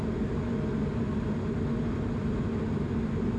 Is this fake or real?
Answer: real